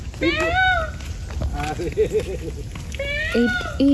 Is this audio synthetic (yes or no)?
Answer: no